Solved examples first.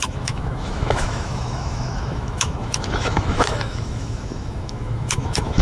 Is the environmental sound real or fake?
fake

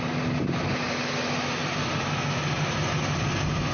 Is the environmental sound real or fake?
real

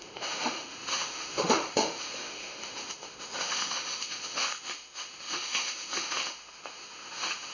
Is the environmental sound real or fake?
fake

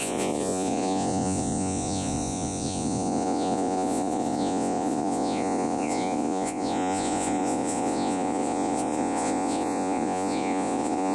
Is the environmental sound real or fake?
fake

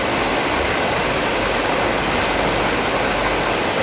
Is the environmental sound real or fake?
real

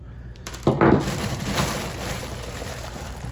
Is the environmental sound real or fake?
fake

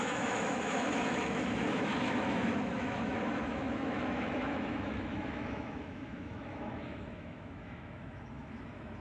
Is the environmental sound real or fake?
fake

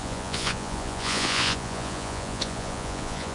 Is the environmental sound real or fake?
fake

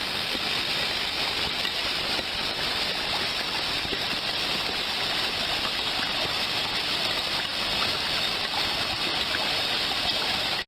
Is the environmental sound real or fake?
real